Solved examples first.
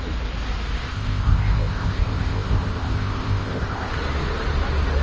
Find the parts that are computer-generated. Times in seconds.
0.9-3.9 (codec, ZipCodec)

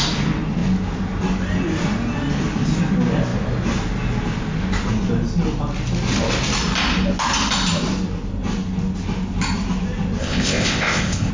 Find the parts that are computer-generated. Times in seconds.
10.2-11.3 (codec, ZipCodec)

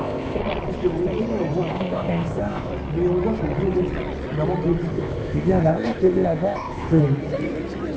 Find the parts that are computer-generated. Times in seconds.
0.0-0.4 (codec, ZipCodec); 1.7-2.7; 4.9-7.0

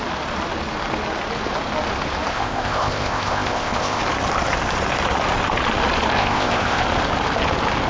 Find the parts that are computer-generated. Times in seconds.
2.3-4.0 (codec, ZipCodec); 6.1-6.8

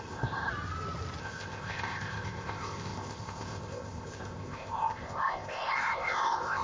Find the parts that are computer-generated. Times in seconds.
0.0-0.5 (codec, ZipCodec); 1.2-6.6

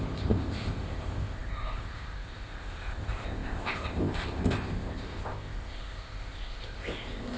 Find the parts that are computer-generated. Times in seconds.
0.0-7.4 (codec, ZipCodec)